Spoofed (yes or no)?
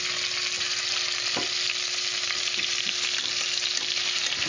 no